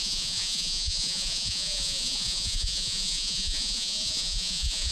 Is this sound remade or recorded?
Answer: remade